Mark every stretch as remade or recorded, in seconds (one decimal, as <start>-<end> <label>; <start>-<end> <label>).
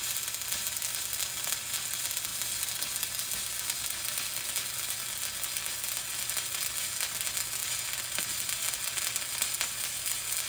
0.0-10.5 recorded